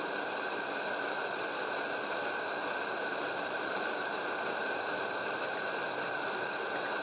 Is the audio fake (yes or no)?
no